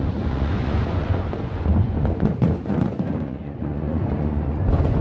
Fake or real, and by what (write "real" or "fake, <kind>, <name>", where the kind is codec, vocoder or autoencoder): fake, vocoder, Vocos